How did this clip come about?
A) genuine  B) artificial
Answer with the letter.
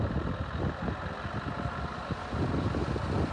A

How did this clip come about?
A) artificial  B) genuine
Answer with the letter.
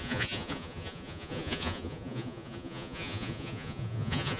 A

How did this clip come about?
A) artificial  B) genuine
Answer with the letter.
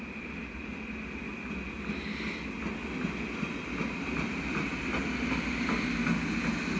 B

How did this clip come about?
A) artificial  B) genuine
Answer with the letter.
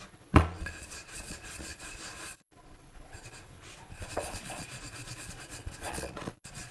A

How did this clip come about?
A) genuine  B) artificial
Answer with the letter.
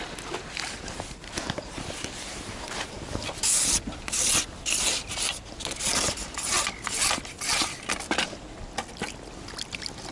A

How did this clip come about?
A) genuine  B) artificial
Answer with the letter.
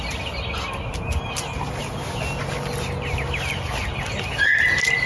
A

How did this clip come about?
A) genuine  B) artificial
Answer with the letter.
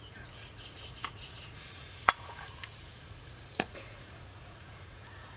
B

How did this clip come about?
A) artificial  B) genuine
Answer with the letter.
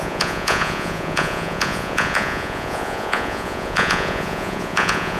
A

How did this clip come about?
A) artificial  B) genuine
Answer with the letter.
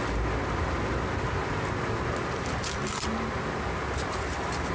B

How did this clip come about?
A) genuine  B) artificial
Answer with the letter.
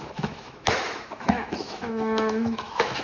B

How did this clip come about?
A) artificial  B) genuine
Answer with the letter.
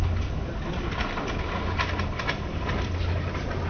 B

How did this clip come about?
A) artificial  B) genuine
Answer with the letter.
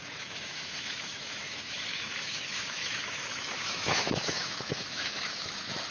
A